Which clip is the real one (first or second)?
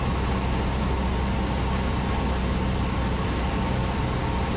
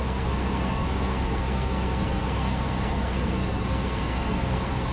first